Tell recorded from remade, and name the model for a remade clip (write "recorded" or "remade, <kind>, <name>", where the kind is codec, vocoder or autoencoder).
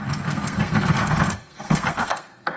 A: remade, codec, SNAC